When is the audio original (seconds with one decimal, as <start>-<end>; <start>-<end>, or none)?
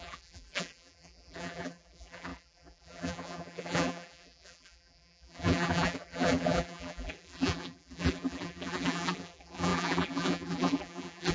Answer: none